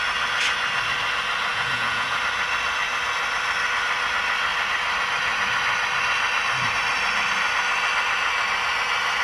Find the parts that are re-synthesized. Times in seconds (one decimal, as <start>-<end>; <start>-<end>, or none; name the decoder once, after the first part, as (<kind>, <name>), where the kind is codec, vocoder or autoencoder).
1.5-2.2 (vocoder, Vocos)